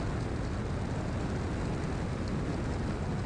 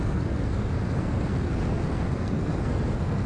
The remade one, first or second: second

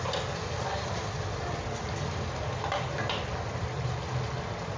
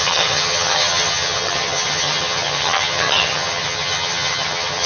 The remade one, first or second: second